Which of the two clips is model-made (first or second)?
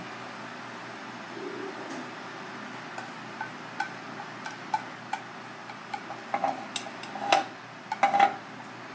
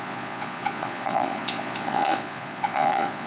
second